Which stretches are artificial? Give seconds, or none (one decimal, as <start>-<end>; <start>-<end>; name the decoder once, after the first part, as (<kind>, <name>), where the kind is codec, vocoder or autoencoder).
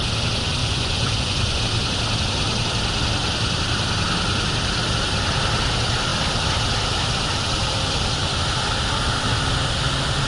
0.6-1.6 (vocoder, Vocos)